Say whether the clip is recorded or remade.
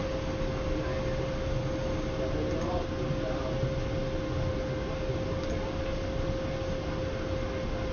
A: recorded